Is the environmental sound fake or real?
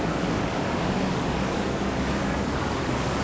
fake